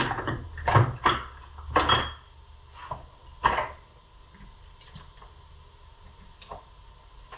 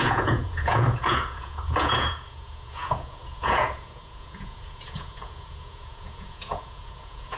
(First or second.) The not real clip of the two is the second